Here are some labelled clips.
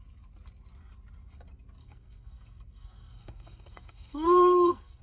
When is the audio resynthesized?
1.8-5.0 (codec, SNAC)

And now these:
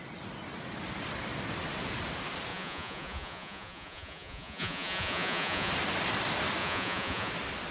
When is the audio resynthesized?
2.5-5.7 (vocoder, Vocos); 6.6-7.3

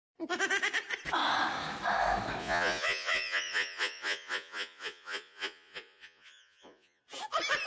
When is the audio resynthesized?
2.4-7.0 (vocoder, Vocos)

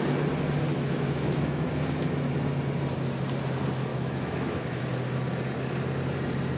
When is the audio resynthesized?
0.7-1.7 (autoencoder, DAC-VAE); 3.9-4.8

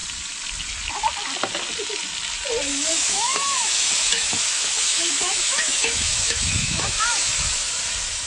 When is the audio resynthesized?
2.7-7.7 (autoencoder, DAC-VAE)

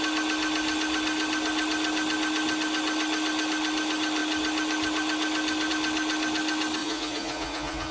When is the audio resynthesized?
6.8-7.9 (vocoder, Vocos)